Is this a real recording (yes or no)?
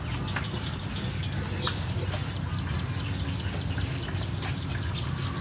yes